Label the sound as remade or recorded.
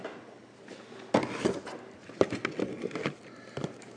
recorded